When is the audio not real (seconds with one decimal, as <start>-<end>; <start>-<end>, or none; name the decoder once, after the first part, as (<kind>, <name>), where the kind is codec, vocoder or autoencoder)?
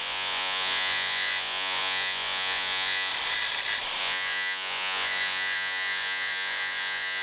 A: 0.0-3.1 (vocoder, Vocos); 4.0-7.2